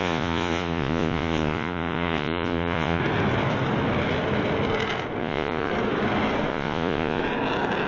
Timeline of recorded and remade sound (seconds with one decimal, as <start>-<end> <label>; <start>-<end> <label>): 0.0-3.0 remade; 3.0-5.2 recorded; 5.2-5.7 remade; 5.7-6.5 recorded; 6.5-7.2 remade; 7.2-7.9 recorded